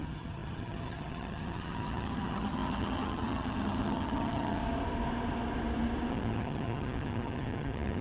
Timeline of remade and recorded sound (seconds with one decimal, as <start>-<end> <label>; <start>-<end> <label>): 0.0-4.6 remade; 4.6-6.1 recorded; 6.1-8.0 remade